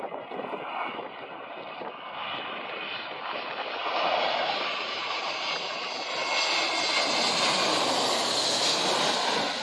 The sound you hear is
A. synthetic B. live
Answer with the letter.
B